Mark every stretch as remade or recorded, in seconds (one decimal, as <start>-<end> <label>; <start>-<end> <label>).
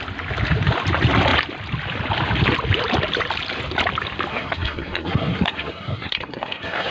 0.0-4.3 recorded; 4.3-6.9 remade